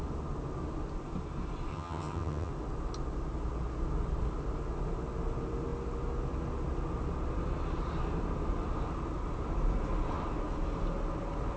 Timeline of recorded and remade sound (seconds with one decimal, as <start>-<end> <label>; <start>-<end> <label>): 0.0-1.7 recorded; 1.7-2.5 remade; 2.5-11.6 recorded